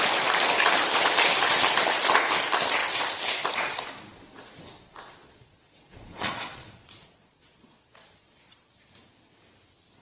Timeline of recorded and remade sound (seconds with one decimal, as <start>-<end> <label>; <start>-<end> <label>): 0.0-5.2 recorded; 5.2-8.9 remade; 8.9-10.0 recorded